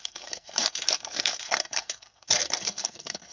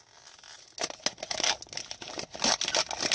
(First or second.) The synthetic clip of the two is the first